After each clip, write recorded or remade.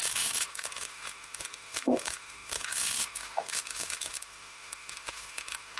remade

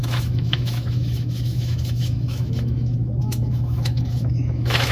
remade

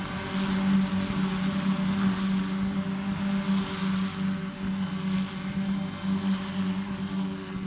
recorded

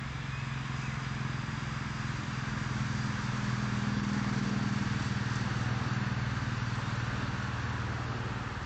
recorded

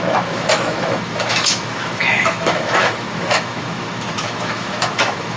remade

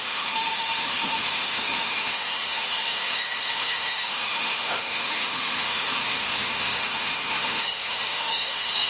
remade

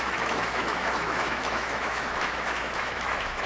remade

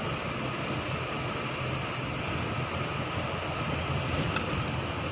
recorded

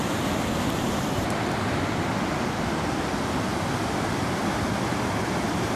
recorded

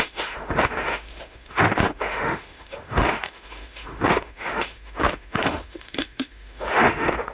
remade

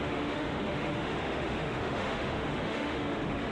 remade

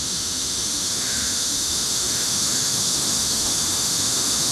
remade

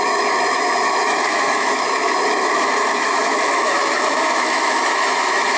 remade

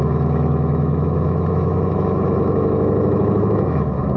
remade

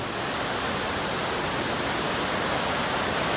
recorded